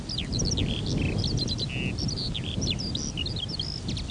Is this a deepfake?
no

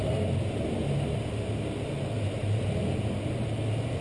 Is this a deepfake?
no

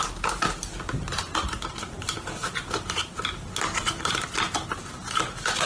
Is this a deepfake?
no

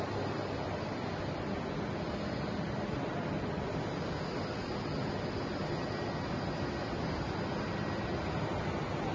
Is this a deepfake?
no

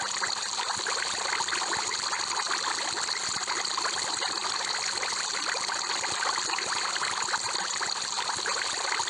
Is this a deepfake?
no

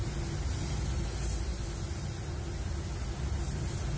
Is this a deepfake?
no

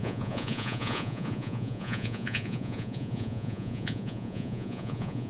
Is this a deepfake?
yes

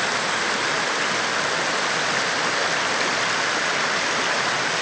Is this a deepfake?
no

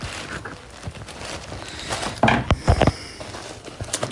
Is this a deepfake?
no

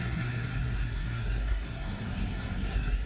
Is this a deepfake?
yes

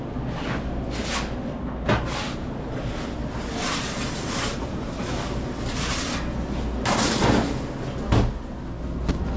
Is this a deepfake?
no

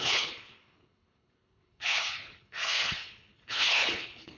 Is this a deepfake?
yes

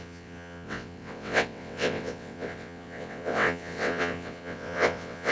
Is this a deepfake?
yes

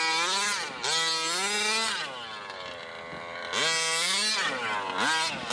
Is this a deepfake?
no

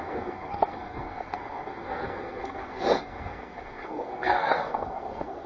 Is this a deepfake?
yes